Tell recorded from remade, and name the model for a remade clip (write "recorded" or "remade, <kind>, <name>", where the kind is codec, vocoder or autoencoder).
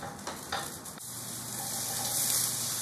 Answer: recorded